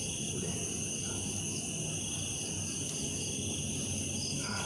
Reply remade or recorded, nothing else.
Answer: recorded